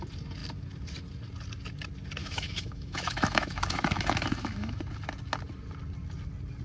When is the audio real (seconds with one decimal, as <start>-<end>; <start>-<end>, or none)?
0.0-2.2; 4.8-6.6